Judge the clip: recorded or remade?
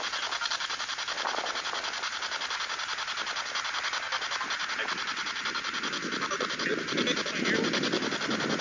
recorded